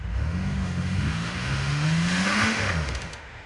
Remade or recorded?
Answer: remade